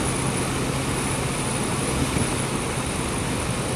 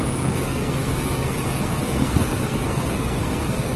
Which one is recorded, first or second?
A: first